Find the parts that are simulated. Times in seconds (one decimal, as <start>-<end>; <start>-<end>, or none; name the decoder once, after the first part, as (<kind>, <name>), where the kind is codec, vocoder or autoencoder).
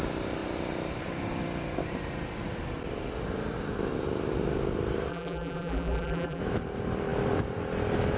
5.1-6.4 (vocoder, BigVGAN v2)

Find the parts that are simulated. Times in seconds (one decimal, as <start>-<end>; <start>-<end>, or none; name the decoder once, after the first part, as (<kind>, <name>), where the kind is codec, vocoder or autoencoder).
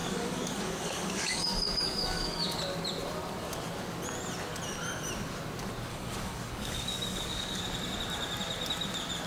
0.0-2.6 (codec, DAC); 5.9-7.6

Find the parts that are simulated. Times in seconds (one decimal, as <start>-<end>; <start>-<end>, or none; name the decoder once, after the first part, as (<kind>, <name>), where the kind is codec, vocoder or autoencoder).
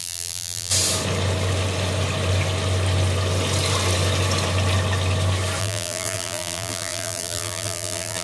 0.0-0.7 (vocoder, BigVGAN v2); 5.6-8.2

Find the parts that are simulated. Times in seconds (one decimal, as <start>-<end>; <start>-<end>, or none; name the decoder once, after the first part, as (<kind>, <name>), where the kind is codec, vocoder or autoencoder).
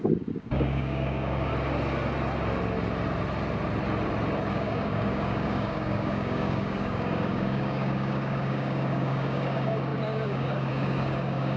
0.0-1.5 (codec, DAC); 4.5-11.6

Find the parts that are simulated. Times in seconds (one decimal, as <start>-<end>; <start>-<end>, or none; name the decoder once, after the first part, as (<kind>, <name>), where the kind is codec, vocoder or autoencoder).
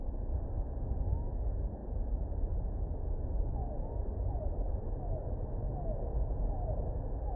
3.6-4.4 (vocoder, BigVGAN v2)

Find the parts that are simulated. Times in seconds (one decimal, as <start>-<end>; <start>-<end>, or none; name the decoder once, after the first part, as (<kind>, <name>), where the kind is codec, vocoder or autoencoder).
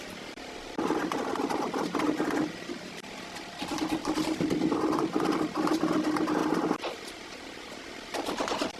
0.0-8.8 (vocoder, BigVGAN v2)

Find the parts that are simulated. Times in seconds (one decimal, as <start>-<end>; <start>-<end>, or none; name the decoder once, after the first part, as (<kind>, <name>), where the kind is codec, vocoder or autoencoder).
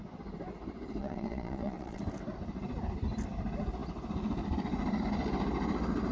1.0-2.0 (vocoder, Vocos)